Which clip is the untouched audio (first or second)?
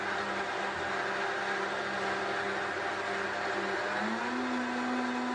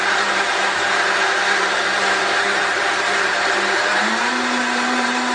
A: first